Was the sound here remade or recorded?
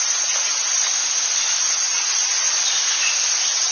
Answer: recorded